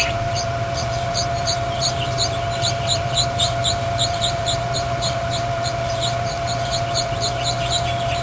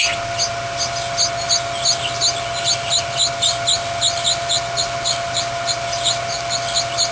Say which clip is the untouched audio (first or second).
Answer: second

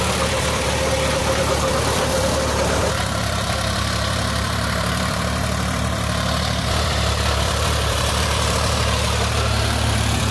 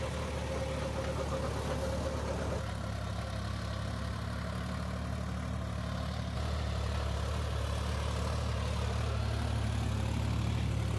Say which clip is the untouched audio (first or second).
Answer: second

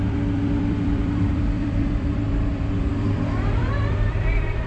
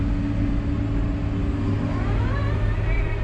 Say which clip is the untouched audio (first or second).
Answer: second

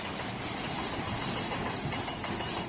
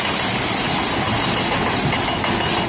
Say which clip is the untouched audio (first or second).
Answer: second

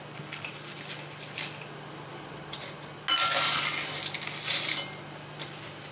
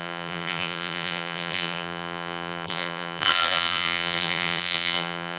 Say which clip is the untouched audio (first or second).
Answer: first